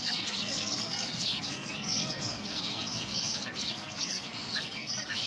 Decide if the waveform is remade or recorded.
remade